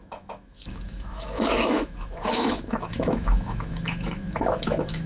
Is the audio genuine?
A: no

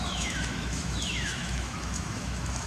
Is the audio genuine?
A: no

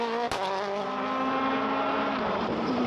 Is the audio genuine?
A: yes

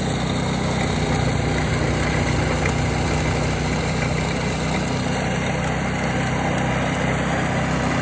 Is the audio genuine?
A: yes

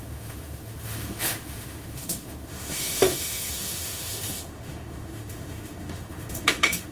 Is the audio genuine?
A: no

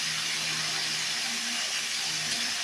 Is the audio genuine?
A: yes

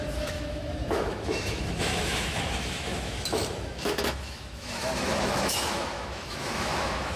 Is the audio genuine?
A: no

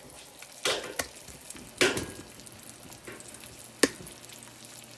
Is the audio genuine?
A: yes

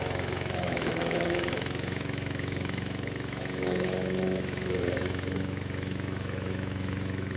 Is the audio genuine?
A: no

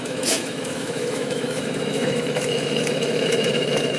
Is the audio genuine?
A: no